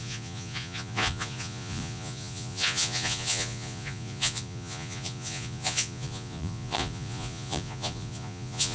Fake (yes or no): yes